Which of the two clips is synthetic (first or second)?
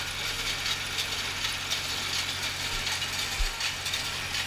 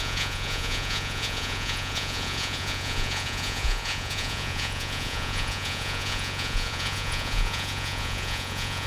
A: second